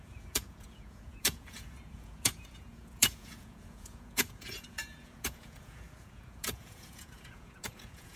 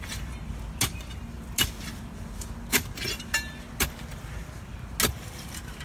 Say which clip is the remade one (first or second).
first